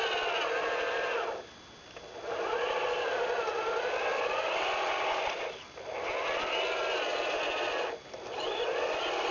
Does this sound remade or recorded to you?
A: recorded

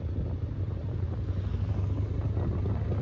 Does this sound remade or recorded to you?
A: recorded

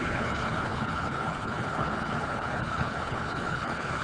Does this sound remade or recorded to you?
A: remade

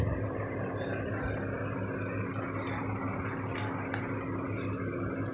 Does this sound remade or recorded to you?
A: recorded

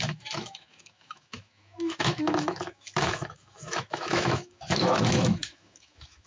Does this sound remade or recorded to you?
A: remade